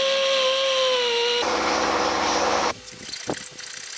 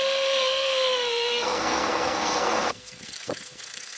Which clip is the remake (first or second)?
second